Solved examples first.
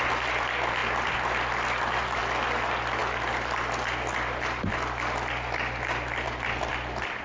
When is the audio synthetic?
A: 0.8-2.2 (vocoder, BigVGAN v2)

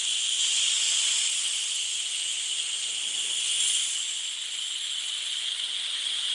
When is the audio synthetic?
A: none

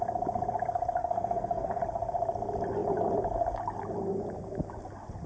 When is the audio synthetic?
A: 1.0-1.8 (codec, SNAC)

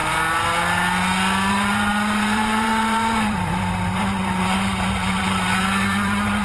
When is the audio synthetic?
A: 1.5-6.4 (vocoder, BigVGAN v2)

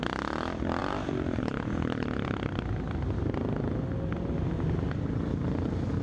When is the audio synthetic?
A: 0.8-1.4 (vocoder, BigVGAN v2)

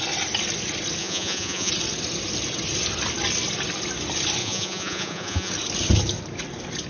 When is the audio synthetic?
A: 1.0-1.7 (vocoder, Vocos); 4.4-5.5